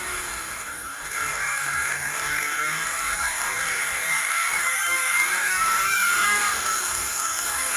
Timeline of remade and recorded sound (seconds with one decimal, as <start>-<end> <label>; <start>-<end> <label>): 0.0-7.8 remade